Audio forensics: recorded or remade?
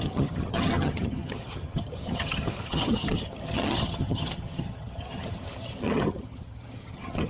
remade